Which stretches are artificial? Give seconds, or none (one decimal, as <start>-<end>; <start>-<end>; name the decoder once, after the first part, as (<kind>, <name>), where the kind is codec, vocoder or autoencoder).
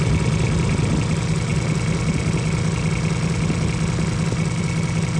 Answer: none